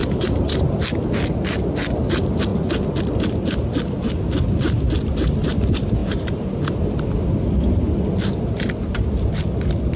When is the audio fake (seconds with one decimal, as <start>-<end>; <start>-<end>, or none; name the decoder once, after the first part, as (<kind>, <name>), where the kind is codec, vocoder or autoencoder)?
0.0-0.6 (vocoder, BigVGAN v2)